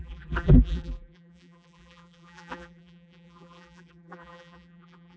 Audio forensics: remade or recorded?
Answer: remade